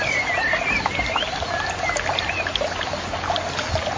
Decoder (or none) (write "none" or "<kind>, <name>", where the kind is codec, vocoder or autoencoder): none